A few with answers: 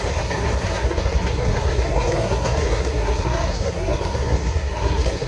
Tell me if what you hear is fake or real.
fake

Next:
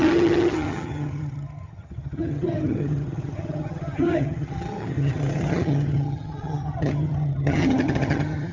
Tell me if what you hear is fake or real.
fake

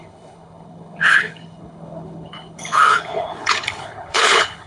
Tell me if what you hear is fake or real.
fake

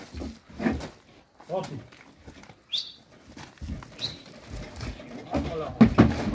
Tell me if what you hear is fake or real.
real